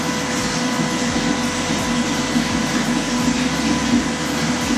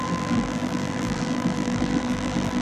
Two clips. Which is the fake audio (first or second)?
second